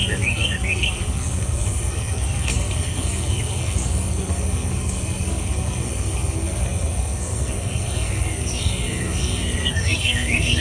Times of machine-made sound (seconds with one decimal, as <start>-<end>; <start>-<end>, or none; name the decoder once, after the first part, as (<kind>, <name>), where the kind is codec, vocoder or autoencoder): 0.0-10.6 (codec, SNAC)